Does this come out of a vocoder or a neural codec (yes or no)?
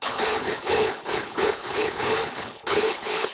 yes